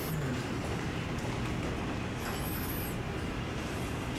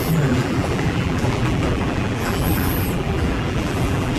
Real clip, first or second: first